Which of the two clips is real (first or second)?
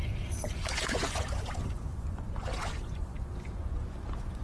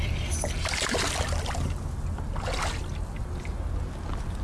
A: second